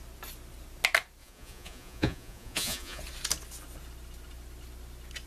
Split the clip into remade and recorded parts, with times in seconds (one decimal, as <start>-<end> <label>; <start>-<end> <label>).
0.0-1.2 recorded; 1.2-3.0 remade; 3.0-5.3 recorded